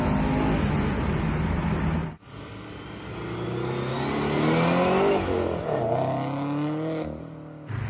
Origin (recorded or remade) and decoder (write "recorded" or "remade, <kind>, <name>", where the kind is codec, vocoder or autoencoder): recorded